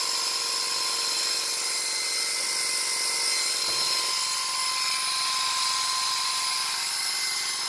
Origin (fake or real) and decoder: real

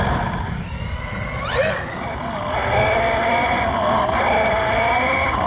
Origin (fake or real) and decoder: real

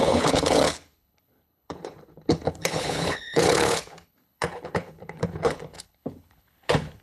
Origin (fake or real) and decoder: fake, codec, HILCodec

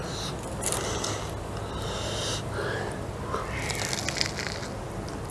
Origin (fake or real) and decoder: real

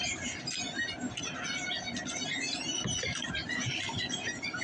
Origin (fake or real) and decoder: real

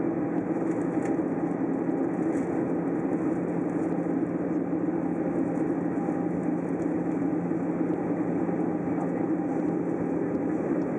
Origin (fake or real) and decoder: real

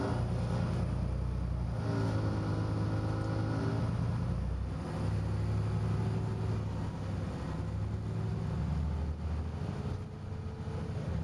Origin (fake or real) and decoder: real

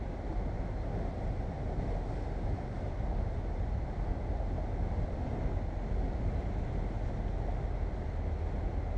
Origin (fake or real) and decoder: real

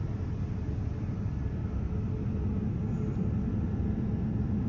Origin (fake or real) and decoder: real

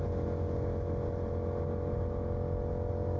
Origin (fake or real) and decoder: real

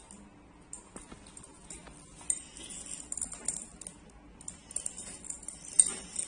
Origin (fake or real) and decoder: real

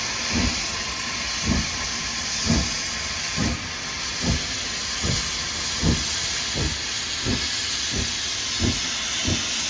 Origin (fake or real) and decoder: real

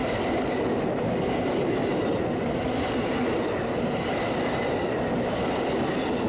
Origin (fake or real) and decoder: real